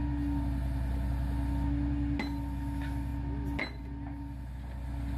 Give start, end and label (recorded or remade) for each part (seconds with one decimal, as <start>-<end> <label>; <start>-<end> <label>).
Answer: 0.0-5.2 recorded